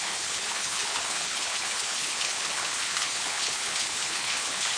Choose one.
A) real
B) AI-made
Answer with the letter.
B